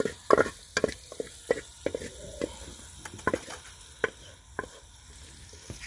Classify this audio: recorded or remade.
recorded